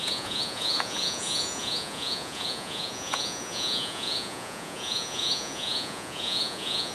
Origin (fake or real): fake